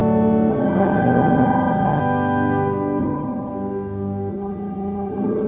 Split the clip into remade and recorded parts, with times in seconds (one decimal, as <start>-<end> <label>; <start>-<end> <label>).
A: 0.0-0.5 recorded; 0.5-2.0 remade; 2.0-3.0 recorded; 3.0-3.5 remade; 3.5-4.3 recorded; 4.3-5.5 remade